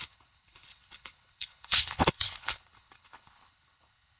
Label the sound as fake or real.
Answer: fake